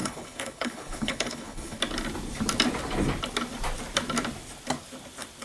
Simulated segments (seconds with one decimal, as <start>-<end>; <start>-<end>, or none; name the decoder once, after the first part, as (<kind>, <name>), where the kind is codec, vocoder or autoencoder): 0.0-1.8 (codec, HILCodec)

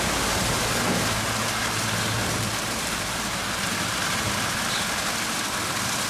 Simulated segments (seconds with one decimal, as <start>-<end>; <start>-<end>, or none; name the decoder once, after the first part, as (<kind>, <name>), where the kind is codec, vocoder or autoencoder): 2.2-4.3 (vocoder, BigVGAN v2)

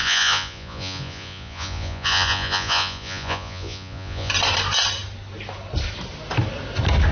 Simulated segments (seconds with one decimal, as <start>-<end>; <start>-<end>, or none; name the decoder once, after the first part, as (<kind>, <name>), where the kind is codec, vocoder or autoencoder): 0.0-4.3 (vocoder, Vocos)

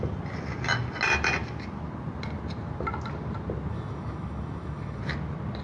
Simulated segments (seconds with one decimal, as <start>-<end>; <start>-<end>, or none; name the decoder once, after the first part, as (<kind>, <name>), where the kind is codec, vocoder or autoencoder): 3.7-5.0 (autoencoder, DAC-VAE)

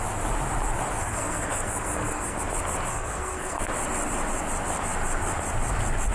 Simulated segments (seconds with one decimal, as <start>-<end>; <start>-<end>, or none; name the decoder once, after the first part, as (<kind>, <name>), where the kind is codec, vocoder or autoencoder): 1.0-2.4 (codec, SNAC); 2.9-3.6

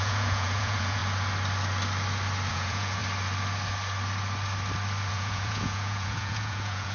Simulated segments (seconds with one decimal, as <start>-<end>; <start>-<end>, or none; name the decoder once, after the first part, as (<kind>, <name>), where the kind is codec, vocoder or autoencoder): 0.0-1.0 (vocoder, Vocos); 2.5-3.0; 5.1-6.9

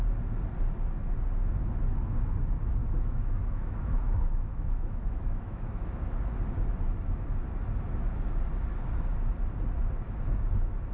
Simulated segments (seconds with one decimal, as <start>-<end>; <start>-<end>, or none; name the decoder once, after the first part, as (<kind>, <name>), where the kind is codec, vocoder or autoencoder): 2.8-5.9 (autoencoder, DAC-VAE)

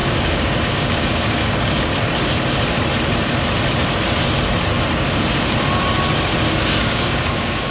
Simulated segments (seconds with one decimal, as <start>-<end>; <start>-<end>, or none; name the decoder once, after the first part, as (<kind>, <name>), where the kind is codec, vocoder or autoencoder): 0.0-1.9 (codec, DAC); 6.5-7.7